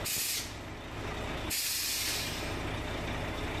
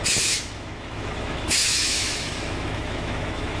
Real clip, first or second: first